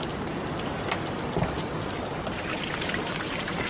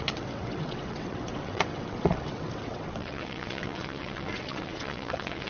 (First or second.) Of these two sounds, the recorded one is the first